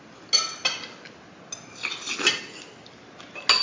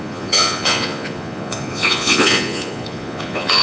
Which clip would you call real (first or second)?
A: first